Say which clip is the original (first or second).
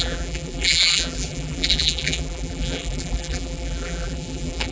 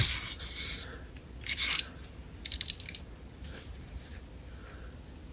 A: second